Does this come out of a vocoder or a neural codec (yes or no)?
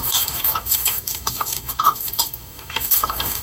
yes